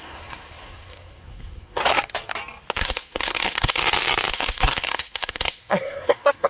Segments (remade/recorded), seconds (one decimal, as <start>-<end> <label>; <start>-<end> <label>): 0.0-1.8 remade; 1.8-2.8 recorded; 2.8-3.8 remade; 3.8-4.3 recorded; 4.3-6.5 remade